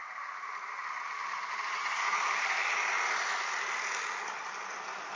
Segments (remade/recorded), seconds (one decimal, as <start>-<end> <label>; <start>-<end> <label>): 0.0-5.2 recorded